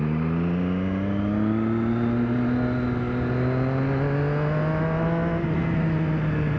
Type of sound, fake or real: real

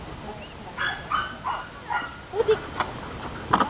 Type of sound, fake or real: real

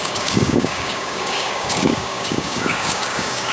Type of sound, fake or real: fake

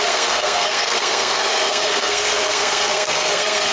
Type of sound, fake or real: fake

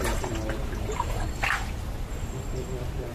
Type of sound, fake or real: real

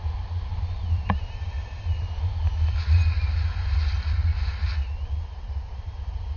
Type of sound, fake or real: real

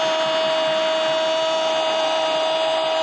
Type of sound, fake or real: real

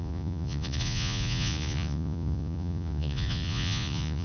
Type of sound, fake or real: fake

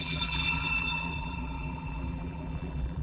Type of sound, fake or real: fake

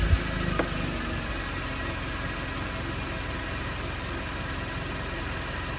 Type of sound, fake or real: real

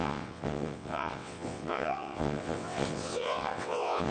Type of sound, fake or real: fake